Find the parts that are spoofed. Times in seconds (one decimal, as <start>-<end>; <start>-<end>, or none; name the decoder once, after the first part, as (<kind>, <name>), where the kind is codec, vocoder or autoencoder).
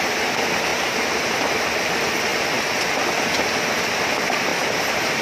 0.7-1.3 (vocoder, BigVGAN v2); 4.5-5.2